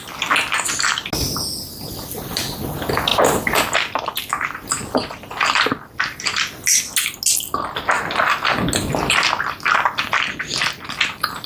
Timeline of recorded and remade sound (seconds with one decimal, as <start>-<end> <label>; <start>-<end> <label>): 0.0-11.5 recorded